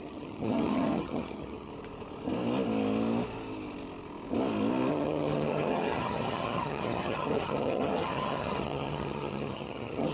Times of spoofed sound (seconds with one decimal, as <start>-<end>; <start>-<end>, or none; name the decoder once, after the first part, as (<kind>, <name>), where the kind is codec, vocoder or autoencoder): 0.0-1.7 (vocoder, HiFi-GAN); 4.9-10.1